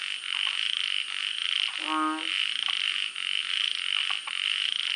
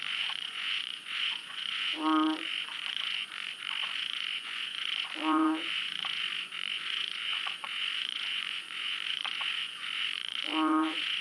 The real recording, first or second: first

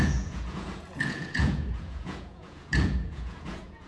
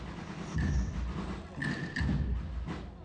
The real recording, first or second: second